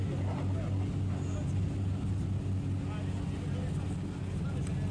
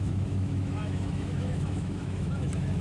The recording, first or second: first